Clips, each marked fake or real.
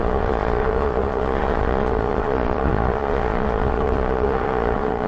fake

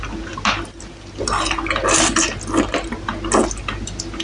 real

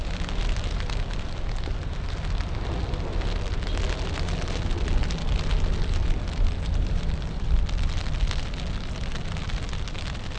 real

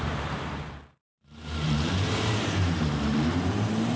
fake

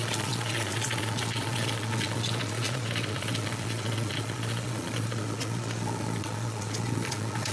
fake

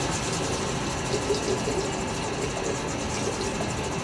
real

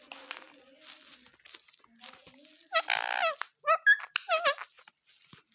real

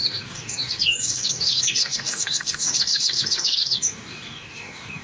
fake